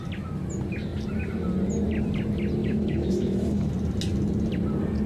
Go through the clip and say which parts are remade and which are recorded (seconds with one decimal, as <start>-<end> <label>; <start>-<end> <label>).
0.0-2.6 recorded; 2.6-3.7 remade; 3.7-5.1 recorded